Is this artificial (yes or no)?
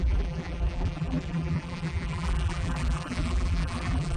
yes